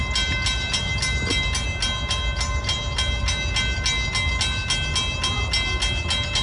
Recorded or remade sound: recorded